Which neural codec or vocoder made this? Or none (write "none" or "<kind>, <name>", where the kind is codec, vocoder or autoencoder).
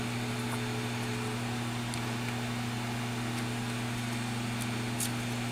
none